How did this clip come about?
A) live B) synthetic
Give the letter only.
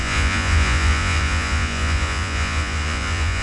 B